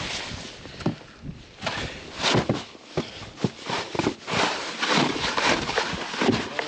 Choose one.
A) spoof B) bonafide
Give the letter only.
B